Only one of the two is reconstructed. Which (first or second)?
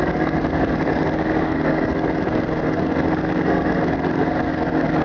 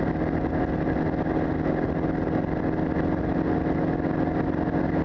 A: first